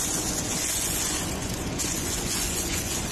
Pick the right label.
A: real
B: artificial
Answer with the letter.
B